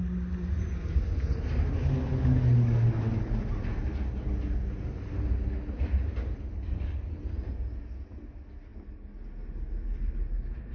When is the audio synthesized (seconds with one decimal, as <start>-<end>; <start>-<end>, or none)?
2.1-3.2; 6.5-7.1